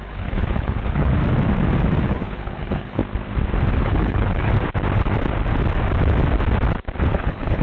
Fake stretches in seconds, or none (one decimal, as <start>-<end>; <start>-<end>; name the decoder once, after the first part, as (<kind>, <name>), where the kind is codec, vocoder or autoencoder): 0.0-1.1 (codec, HILCodec); 2.0-3.0; 3.7-4.5; 7.1-7.6